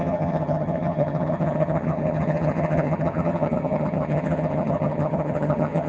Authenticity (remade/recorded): remade